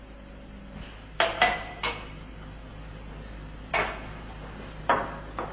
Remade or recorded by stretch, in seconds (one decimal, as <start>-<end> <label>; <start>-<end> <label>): 0.0-5.5 recorded